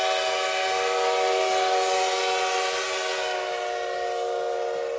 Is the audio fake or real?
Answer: real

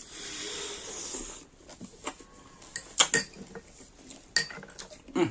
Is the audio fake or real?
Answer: real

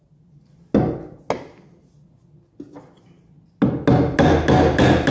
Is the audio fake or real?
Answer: real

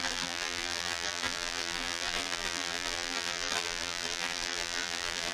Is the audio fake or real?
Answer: fake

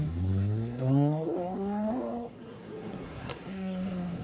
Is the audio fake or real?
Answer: fake